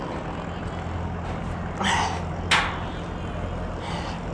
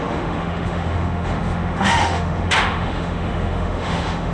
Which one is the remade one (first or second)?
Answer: second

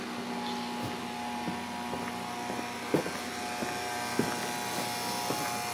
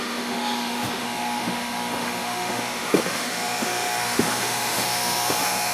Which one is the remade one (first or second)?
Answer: second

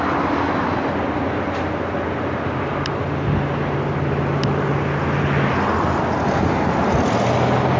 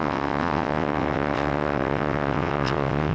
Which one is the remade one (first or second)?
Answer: second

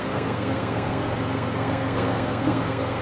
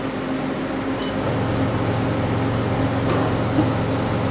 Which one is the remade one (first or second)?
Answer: first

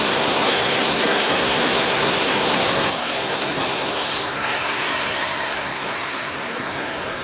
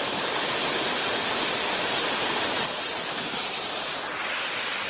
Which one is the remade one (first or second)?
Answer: first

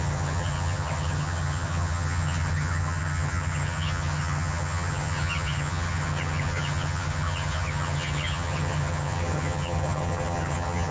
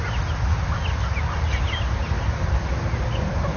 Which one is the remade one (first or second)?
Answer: first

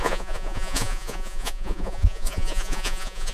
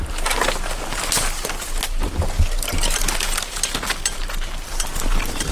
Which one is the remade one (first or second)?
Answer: first